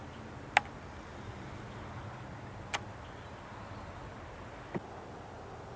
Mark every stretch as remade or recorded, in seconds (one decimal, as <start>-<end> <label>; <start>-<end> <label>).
0.0-5.8 recorded